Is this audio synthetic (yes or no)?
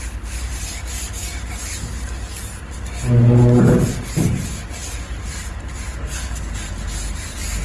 no